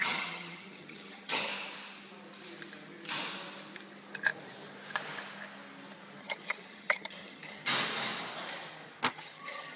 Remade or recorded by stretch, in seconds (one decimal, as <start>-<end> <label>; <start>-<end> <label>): 0.0-1.5 remade; 1.5-6.2 recorded; 6.2-7.7 remade; 7.7-9.1 recorded; 9.1-9.8 remade